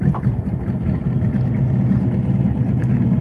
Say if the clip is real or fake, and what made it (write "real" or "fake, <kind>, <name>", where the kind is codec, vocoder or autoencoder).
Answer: real